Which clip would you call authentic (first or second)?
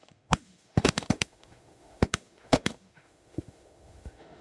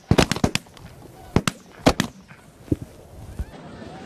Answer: second